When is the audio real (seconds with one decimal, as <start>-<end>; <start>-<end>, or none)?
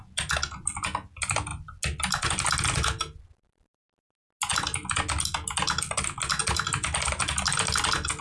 0.0-8.2